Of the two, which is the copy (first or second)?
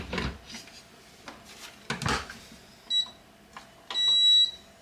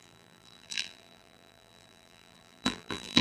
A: second